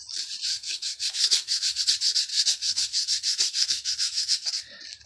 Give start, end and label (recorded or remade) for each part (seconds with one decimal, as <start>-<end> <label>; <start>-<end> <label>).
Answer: 0.0-0.5 recorded; 0.5-1.8 remade; 1.8-2.3 recorded; 2.3-4.5 remade; 4.5-5.1 recorded